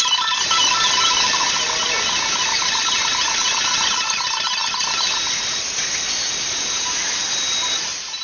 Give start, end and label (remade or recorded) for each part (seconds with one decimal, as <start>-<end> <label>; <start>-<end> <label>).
0.0-8.2 recorded